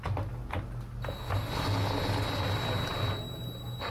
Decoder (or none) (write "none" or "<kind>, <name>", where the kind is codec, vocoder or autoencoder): none